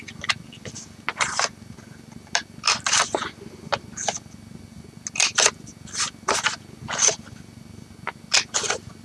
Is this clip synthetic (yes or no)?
no